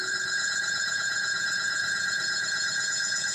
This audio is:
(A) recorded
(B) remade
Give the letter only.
B